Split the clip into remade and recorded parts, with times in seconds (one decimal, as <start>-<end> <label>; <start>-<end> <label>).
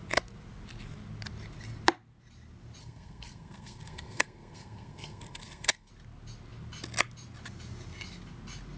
0.0-2.8 recorded; 2.8-5.9 remade; 5.9-8.8 recorded